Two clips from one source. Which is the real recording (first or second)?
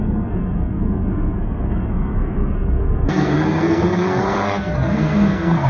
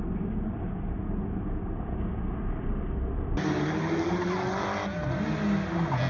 second